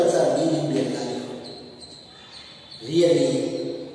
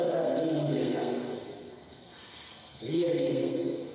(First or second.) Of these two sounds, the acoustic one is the first